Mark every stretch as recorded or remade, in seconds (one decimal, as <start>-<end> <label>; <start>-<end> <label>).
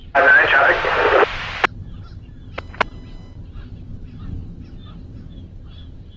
0.0-1.4 remade; 1.4-6.2 recorded